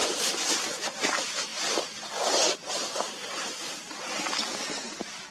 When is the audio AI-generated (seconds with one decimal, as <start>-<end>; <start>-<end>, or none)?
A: 0.0-0.6